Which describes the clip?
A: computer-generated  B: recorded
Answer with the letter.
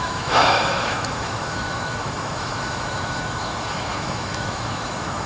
A